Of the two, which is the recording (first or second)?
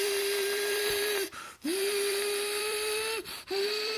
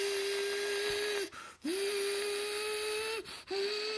second